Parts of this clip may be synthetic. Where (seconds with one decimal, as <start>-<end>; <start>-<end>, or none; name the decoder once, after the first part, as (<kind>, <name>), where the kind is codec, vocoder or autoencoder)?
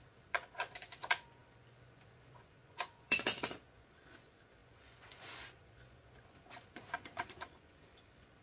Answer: 0.0-8.4 (vocoder, Vocos)